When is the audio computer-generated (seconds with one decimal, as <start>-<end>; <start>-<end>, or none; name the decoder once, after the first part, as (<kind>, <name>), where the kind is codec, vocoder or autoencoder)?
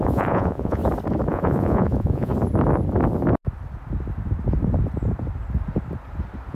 0.0-0.8 (vocoder, Vocos); 1.3-2.3